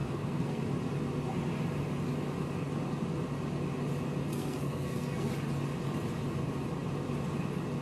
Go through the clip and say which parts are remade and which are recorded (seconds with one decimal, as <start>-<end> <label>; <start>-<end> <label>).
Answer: 0.0-0.6 remade; 0.6-4.3 recorded; 4.3-5.3 remade; 5.3-7.8 recorded